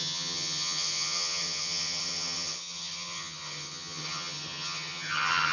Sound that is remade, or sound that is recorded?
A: remade